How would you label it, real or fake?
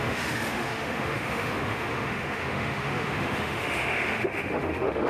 fake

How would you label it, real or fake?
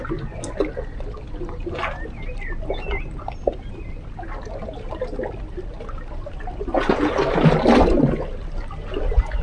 real